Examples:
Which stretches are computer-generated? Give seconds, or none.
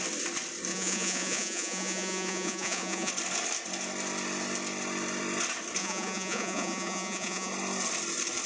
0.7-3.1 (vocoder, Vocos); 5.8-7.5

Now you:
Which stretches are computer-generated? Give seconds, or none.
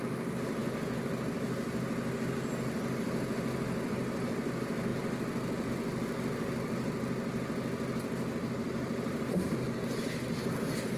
none